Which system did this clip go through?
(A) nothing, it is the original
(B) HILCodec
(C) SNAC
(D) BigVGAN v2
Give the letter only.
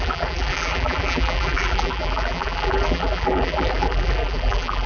D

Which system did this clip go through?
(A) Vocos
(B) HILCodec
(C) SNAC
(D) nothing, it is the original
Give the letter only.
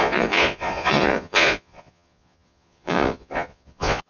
A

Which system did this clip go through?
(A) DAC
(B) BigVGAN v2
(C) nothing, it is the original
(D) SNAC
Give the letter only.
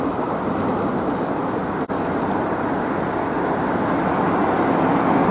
B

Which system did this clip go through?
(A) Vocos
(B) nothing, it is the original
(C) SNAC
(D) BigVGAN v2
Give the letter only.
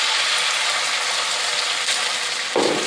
B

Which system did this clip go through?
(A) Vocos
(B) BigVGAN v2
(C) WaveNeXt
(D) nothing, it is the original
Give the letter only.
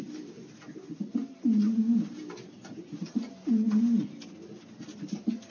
D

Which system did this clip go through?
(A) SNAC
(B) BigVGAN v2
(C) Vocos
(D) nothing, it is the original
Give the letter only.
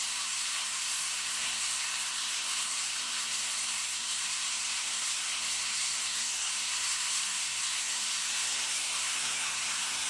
A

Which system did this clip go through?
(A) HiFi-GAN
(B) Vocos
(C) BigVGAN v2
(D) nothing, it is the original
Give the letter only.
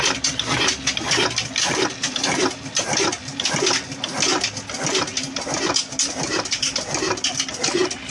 D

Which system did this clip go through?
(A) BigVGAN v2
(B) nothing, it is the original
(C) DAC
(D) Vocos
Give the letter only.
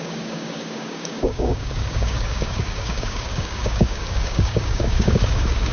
C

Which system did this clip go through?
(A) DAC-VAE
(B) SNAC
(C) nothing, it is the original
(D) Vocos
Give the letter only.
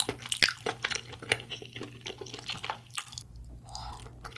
C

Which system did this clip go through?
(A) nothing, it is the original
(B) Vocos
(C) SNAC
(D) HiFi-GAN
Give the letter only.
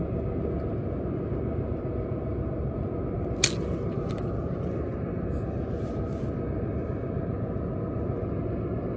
A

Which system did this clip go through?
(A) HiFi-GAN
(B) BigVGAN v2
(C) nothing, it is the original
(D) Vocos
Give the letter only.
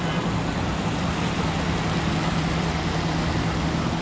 C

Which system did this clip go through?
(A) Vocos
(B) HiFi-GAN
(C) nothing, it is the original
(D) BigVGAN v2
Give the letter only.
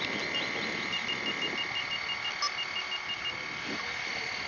C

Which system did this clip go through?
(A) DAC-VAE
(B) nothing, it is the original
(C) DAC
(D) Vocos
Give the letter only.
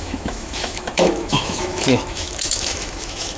A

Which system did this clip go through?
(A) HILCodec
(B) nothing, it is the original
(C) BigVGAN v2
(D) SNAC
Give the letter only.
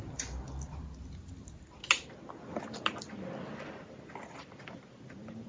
B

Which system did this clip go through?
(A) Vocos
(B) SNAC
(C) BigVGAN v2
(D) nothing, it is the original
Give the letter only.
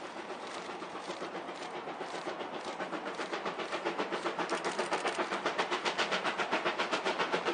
C